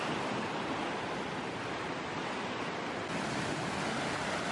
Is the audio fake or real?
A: real